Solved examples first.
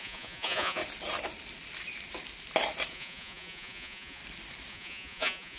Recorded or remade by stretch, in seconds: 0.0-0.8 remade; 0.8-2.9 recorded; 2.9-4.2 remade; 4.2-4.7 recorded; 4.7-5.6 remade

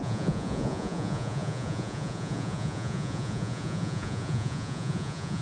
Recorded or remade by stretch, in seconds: 0.0-5.4 remade

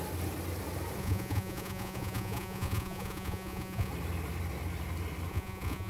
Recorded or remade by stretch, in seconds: 0.0-1.0 recorded; 1.0-3.9 remade; 3.9-5.3 recorded; 5.3-5.9 remade

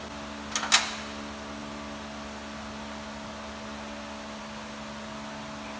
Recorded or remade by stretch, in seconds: 0.0-5.8 recorded